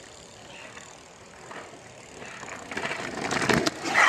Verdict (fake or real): real